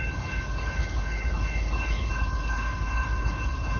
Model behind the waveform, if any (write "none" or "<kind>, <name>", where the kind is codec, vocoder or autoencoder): codec, HILCodec